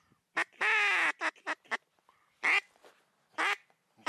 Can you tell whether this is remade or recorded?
recorded